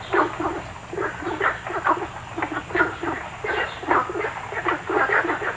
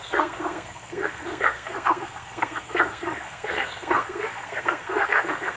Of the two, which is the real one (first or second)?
first